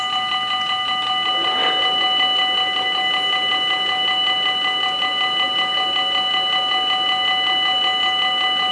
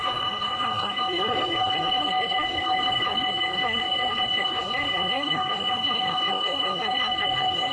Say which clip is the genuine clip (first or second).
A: first